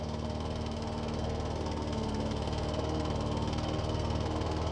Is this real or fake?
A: fake